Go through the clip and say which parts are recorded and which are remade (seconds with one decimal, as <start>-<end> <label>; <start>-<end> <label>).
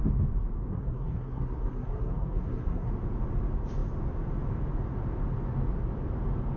0.0-0.7 recorded; 0.7-2.9 remade; 2.9-6.6 recorded